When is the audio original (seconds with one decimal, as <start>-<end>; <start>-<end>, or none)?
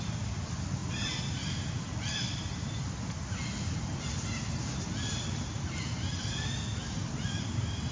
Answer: 0.0-7.9